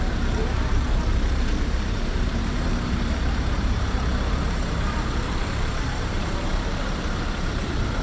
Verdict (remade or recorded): remade